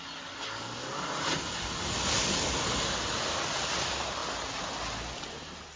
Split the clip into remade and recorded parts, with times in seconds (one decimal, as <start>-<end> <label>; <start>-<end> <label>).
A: 0.0-5.8 recorded